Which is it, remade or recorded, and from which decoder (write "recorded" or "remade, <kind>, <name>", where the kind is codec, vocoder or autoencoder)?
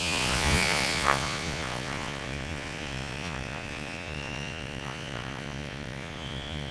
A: remade, vocoder, Vocos